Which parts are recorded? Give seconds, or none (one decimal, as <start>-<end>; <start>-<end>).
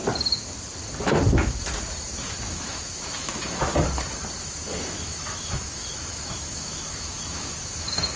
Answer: 0.0-2.3; 3.7-4.4